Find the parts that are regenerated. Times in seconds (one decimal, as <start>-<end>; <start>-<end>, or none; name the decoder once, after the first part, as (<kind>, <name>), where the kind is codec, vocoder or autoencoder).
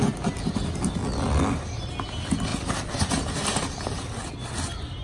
none